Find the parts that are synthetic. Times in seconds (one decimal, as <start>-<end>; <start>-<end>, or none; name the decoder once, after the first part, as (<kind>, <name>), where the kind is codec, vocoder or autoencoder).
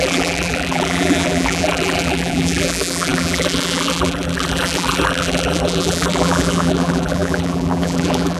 0.0-8.4 (vocoder, BigVGAN v2)